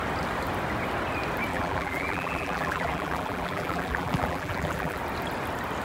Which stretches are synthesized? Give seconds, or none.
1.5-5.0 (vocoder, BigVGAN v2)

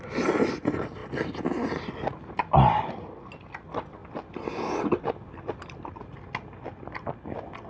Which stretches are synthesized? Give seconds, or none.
4.0-6.1 (vocoder, BigVGAN v2)

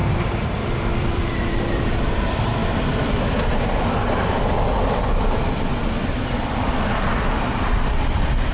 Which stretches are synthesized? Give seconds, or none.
0.0-8.5 (vocoder, BigVGAN v2)

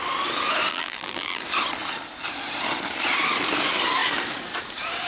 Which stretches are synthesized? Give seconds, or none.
0.7-1.4 (vocoder, BigVGAN v2)

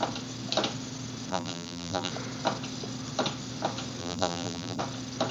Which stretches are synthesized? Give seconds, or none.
1.3-2.1 (vocoder, BigVGAN v2); 4.0-4.8